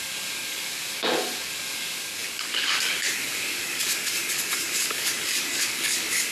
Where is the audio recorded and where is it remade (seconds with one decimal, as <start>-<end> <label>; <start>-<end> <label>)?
0.0-6.3 remade